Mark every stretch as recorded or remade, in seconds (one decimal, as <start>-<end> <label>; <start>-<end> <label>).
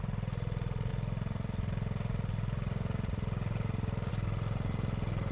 0.0-5.3 recorded